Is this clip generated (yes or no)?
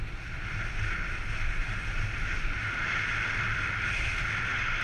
no